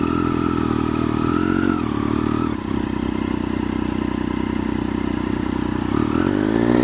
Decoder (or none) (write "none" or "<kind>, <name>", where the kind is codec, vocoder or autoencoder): none